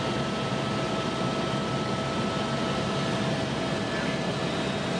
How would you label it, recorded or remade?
recorded